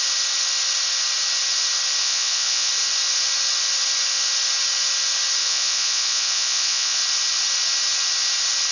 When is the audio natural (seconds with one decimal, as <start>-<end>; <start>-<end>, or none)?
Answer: 0.0-2.0; 2.7-5.4; 7.0-8.7